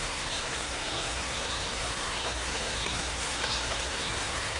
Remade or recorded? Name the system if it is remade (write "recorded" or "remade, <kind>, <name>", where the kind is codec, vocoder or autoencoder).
remade, codec, SNAC